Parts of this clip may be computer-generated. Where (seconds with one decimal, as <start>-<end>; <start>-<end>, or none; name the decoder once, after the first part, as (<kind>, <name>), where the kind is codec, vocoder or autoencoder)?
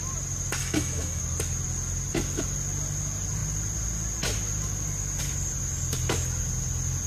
0.6-1.2 (autoencoder, DAC-VAE)